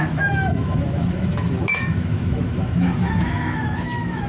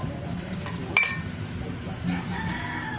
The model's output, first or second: first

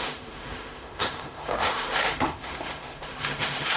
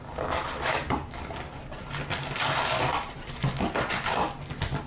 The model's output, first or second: first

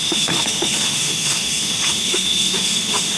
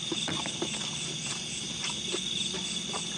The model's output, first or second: first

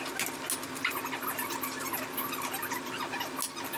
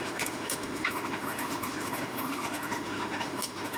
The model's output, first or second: second